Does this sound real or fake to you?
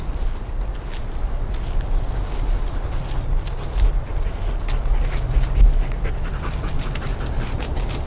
real